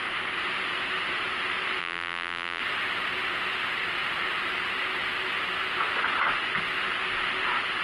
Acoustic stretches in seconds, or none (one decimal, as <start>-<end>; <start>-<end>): 0.0-1.8; 2.6-7.8